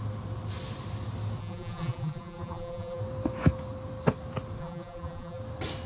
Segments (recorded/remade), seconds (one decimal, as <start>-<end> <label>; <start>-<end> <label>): 0.0-1.4 recorded; 1.4-3.0 remade; 3.0-4.6 recorded; 4.6-5.4 remade; 5.4-5.9 recorded